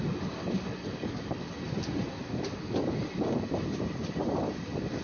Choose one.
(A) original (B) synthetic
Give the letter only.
A